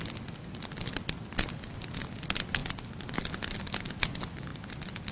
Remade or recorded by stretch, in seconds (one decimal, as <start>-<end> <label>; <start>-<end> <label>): 0.0-5.1 recorded